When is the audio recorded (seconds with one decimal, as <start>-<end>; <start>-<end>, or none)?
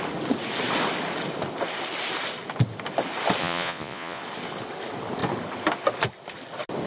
0.0-3.4; 4.2-6.9